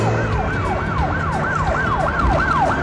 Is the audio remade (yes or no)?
no